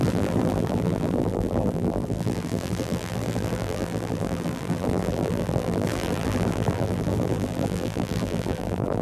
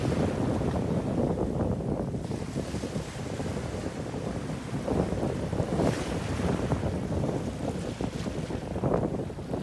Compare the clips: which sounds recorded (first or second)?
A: second